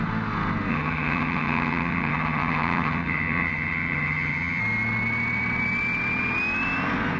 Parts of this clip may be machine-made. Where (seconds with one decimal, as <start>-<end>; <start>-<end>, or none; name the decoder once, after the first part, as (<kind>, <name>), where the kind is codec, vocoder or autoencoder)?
0.7-4.6 (vocoder, HiFi-GAN)